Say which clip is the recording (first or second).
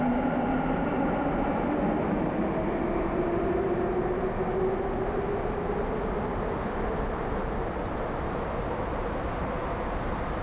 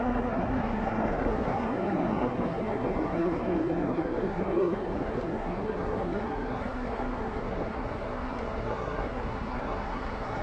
first